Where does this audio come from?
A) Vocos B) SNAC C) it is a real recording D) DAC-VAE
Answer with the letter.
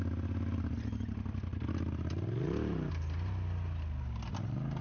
C